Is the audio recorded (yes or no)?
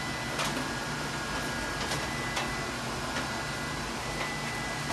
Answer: yes